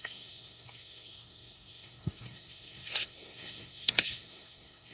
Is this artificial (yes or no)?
yes